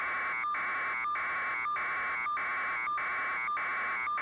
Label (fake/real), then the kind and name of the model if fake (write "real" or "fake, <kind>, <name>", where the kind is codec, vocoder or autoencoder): real